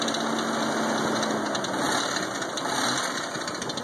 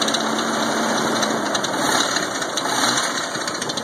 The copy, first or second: second